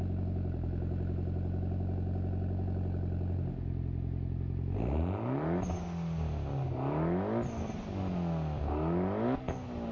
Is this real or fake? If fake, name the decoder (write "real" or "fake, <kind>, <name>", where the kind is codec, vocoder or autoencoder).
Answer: real